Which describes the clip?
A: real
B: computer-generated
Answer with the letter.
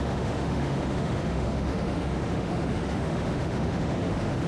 B